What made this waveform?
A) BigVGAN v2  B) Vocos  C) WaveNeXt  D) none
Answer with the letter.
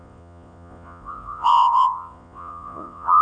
B